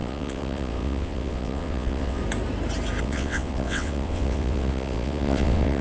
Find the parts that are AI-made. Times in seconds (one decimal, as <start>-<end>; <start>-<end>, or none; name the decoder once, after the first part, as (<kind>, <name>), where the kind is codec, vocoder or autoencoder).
0.0-2.2 (vocoder, WaveNeXt); 3.0-5.8